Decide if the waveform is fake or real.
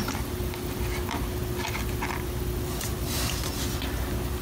real